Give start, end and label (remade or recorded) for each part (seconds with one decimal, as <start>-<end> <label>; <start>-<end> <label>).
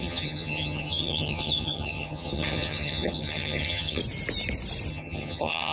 0.0-4.0 remade; 4.0-4.9 recorded; 4.9-5.7 remade